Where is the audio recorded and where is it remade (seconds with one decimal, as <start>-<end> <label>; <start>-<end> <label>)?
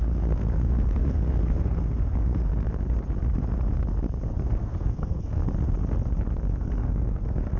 0.0-2.5 remade; 2.5-4.4 recorded; 4.4-5.4 remade; 5.4-6.6 recorded; 6.6-7.6 remade